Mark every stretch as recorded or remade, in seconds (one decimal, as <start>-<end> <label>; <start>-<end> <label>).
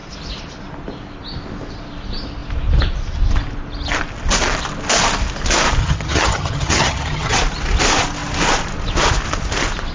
0.0-5.8 recorded; 5.8-7.4 remade; 7.4-9.9 recorded